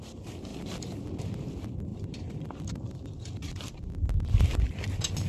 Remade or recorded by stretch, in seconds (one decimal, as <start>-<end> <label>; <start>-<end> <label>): 0.0-0.5 recorded; 0.5-1.1 remade; 1.1-1.9 recorded; 1.9-3.7 remade; 3.7-5.3 recorded